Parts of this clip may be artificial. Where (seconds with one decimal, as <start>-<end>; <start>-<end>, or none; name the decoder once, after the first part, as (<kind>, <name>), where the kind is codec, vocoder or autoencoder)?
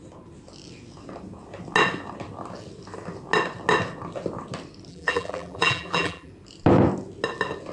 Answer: 4.9-6.3 (vocoder, BigVGAN v2)